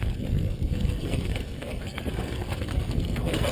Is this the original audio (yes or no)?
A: no